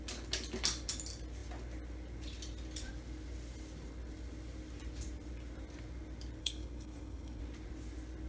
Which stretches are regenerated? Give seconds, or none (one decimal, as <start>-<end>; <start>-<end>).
6.4-7.4